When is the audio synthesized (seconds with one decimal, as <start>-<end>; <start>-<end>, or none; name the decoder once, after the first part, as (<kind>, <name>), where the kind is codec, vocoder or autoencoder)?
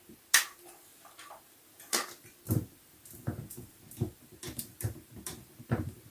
none